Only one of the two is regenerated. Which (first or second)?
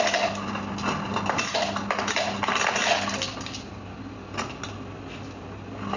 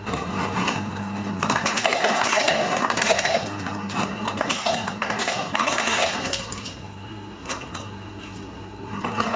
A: second